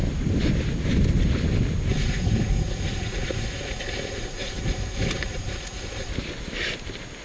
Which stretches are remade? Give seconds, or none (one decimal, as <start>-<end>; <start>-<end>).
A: 1.9-6.1